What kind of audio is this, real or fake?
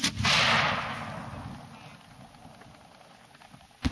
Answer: real